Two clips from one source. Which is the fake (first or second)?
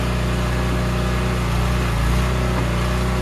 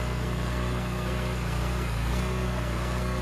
second